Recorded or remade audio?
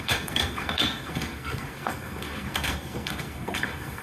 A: remade